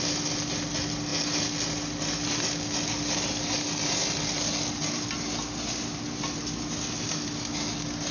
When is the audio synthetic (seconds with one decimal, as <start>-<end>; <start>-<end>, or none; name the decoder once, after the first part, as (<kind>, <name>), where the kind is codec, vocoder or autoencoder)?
none